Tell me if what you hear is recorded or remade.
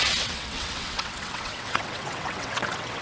remade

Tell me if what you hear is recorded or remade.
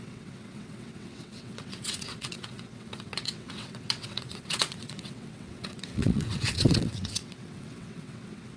remade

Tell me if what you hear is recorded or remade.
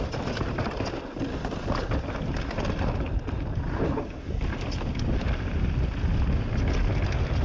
recorded